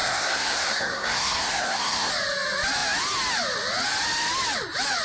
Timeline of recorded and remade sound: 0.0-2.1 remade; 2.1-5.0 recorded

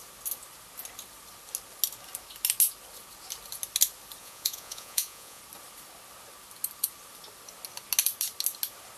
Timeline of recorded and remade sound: 0.0-4.2 recorded; 4.2-5.4 remade; 5.4-9.0 recorded

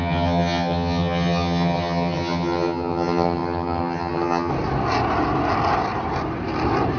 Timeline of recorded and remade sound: 0.0-4.5 remade; 4.5-7.0 recorded

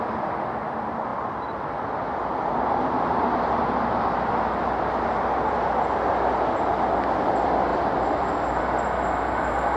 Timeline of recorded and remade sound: 0.0-7.7 recorded; 7.7-8.6 remade; 8.6-9.8 recorded